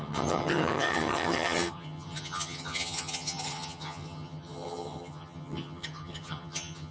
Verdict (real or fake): fake